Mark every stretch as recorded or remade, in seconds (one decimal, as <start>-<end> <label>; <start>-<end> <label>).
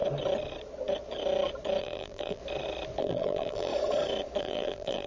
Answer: 0.0-1.8 recorded; 1.8-2.4 remade; 2.4-3.0 recorded; 3.0-3.7 remade; 3.7-4.4 recorded; 4.4-5.1 remade